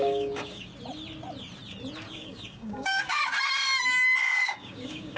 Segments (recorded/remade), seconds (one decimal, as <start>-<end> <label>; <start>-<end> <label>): 0.0-0.7 remade; 0.7-2.1 recorded; 2.1-3.2 remade; 3.2-4.2 recorded; 4.2-5.2 remade